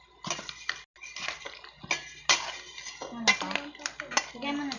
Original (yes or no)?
yes